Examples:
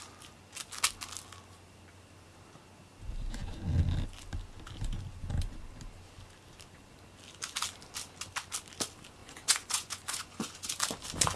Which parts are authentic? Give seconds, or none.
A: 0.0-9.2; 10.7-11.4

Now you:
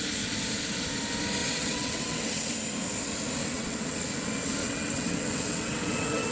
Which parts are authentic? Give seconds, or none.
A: 0.0-1.4; 2.5-3.4; 4.0-4.6

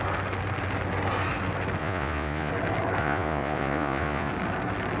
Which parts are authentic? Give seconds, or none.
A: 0.0-1.8; 2.5-3.0; 4.3-5.0

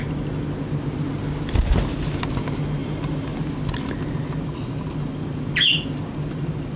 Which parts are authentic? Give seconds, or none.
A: 0.0-2.8; 3.4-6.8

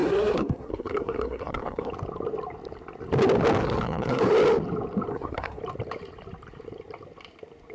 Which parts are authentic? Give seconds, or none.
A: 1.9-3.6; 4.2-5.1; 5.6-7.7

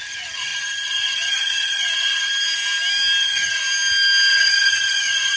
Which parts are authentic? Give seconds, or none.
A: 2.3-3.2; 3.6-4.3

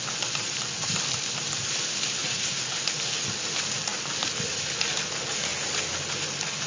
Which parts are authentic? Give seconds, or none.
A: 0.0-2.2; 2.9-6.7